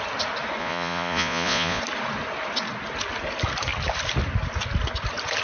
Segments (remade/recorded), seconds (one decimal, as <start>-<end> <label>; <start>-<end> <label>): 0.0-0.6 recorded; 0.6-1.8 remade; 1.8-5.4 recorded